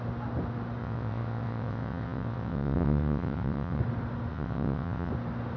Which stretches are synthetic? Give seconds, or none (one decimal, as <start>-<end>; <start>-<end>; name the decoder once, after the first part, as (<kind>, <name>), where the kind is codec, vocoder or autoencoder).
0.8-3.8 (vocoder, WaveNeXt); 4.3-5.1